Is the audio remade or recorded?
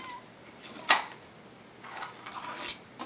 recorded